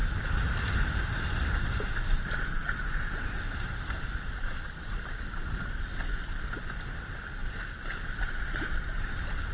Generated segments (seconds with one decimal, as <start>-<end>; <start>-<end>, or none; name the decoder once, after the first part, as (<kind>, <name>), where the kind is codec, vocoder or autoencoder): none